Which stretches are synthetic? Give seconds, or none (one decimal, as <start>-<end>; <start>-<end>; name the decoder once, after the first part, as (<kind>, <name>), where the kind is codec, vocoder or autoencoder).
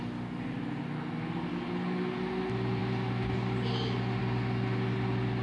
none